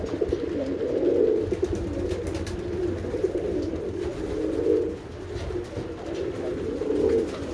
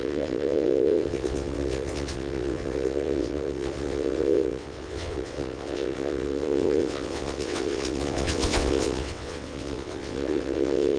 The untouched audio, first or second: first